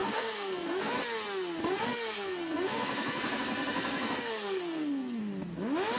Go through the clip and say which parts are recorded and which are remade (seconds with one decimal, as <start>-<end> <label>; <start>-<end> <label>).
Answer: 0.0-0.9 remade; 0.9-1.6 recorded; 1.6-5.2 remade; 5.2-6.0 recorded